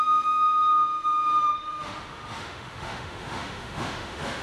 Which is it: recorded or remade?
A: remade